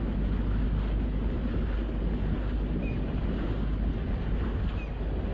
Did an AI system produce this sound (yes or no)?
no